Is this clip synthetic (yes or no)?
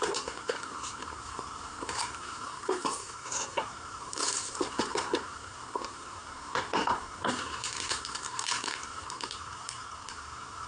yes